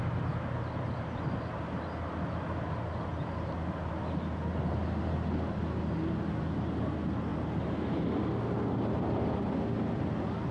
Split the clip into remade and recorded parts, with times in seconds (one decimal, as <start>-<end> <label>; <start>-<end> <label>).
0.0-10.5 recorded